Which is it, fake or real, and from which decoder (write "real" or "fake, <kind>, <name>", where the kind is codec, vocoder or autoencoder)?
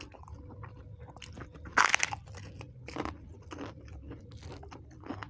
real